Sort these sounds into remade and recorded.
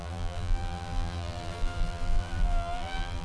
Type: remade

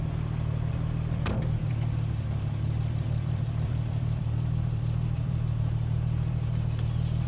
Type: remade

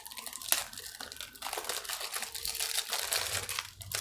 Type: recorded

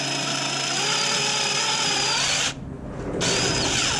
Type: recorded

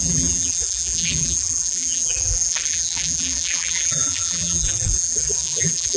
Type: remade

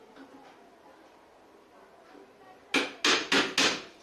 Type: recorded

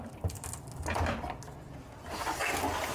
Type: recorded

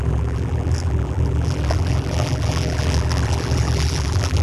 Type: remade